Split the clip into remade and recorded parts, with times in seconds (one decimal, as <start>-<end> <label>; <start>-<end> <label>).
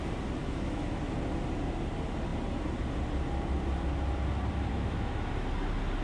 0.0-0.4 recorded; 0.4-1.0 remade; 1.0-4.7 recorded; 4.7-5.3 remade; 5.3-6.0 recorded